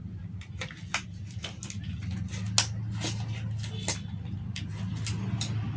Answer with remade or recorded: recorded